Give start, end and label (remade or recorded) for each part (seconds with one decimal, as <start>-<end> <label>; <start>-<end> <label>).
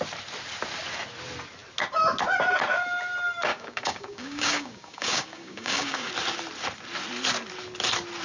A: 0.0-3.5 recorded; 3.5-6.1 remade; 6.1-8.2 recorded